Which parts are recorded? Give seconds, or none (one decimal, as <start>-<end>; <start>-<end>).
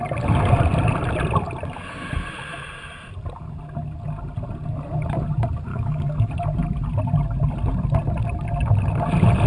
0.0-5.7; 6.3-9.5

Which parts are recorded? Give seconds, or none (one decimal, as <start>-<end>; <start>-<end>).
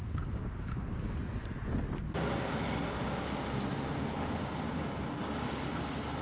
1.1-5.2; 5.8-6.2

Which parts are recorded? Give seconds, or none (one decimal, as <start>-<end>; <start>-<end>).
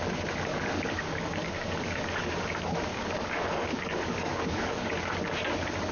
0.0-0.5; 2.3-2.9; 4.9-5.9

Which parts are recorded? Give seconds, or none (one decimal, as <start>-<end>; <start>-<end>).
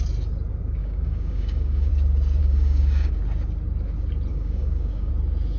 0.0-0.8; 1.9-2.4; 3.1-4.3; 5.1-5.6